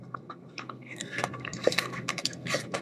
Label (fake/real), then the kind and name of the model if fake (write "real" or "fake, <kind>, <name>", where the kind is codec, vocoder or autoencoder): fake, codec, SNAC